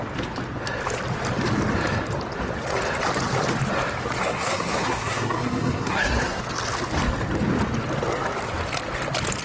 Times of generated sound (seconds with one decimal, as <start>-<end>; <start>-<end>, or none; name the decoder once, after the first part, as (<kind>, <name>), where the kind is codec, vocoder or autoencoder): 4.2-6.4 (codec, SNAC)